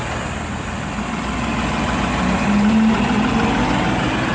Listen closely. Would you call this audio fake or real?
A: real